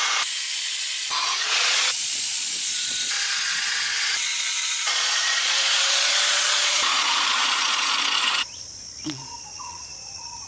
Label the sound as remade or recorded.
remade